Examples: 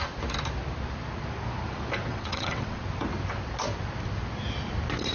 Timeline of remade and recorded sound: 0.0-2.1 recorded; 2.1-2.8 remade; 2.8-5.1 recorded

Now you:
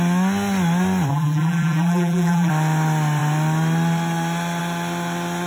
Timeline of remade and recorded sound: 0.0-1.1 recorded; 1.1-2.5 remade; 2.5-5.5 recorded

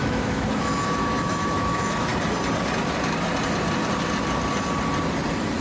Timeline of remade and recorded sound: 0.0-2.1 remade; 2.1-5.6 recorded

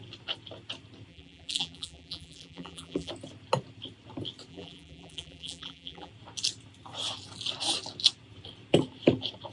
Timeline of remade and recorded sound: 0.0-1.1 recorded; 1.1-3.1 remade; 3.1-4.5 recorded; 4.5-6.1 remade; 6.1-9.5 recorded

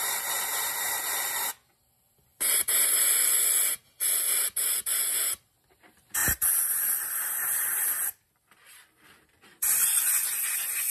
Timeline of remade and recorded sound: 0.0-2.3 recorded; 2.3-3.0 remade; 3.0-6.2 recorded; 6.2-10.1 remade; 10.1-10.9 recorded

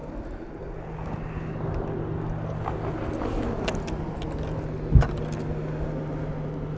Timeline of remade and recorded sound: 0.0-6.8 recorded

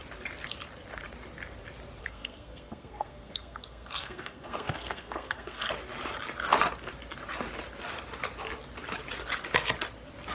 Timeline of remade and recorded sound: 0.0-2.0 recorded; 2.0-5.7 remade; 5.7-10.3 recorded